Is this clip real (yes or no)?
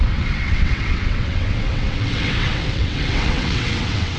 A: no